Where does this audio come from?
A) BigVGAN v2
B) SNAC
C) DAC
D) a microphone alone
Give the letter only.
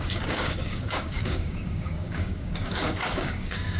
C